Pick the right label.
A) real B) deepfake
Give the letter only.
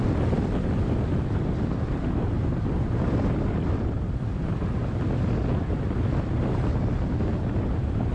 A